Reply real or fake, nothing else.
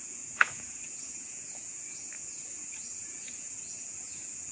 fake